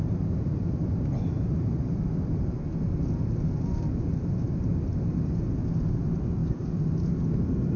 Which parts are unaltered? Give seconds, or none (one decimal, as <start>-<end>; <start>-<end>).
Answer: 0.0-7.8